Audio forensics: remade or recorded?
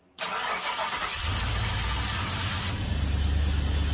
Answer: recorded